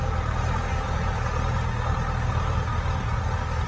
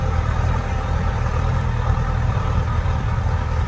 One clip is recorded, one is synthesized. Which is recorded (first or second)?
first